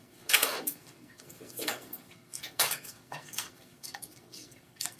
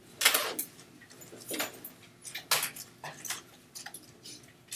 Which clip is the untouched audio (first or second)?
second